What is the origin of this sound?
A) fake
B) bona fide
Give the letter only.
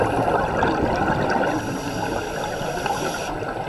B